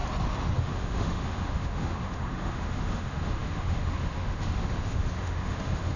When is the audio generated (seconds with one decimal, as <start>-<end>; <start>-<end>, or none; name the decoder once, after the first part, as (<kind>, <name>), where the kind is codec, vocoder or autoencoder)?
0.6-6.0 (autoencoder, DAC-VAE)